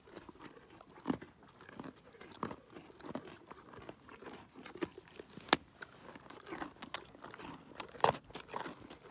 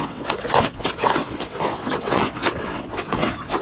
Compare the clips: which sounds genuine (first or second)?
first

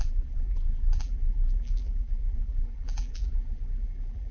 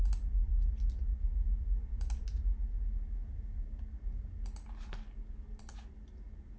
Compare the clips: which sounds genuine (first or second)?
second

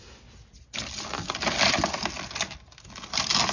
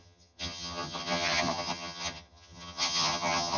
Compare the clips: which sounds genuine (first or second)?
first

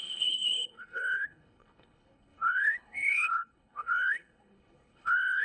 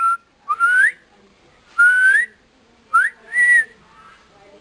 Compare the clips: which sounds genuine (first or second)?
second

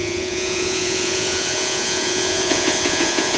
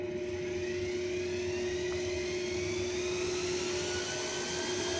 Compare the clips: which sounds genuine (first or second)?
second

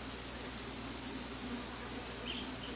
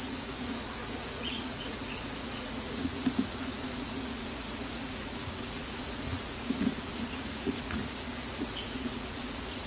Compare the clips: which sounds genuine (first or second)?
first